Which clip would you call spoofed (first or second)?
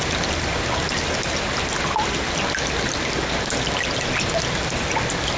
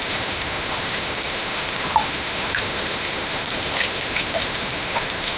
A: second